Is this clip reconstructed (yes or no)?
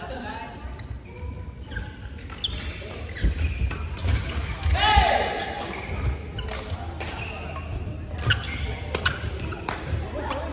no